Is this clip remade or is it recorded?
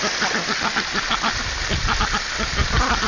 recorded